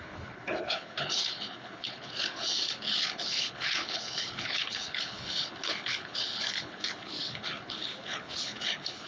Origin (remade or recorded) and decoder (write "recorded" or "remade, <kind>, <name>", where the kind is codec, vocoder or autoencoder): remade, codec, HILCodec